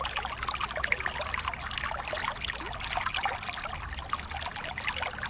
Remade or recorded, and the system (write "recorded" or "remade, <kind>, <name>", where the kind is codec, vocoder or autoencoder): recorded